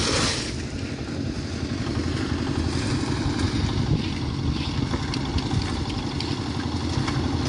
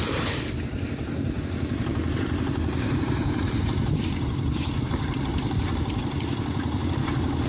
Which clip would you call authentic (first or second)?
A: first